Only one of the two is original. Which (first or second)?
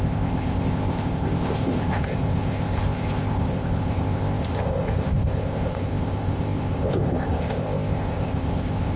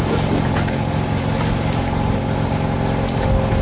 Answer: second